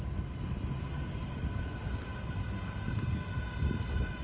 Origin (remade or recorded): recorded